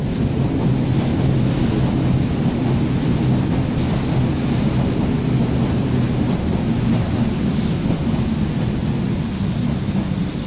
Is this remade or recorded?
recorded